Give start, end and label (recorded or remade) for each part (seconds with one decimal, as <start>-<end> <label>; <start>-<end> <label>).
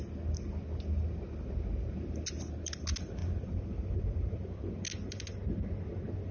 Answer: 0.0-6.3 recorded